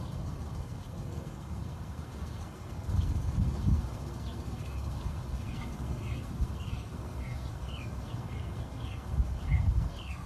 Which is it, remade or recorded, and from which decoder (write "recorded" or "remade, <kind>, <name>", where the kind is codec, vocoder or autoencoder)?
remade, codec, SNAC